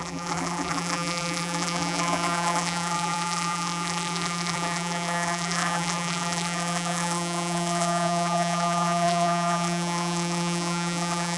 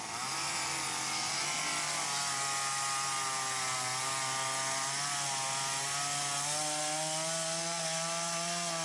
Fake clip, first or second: first